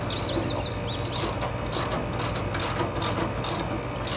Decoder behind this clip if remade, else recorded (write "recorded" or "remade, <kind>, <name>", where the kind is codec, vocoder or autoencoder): recorded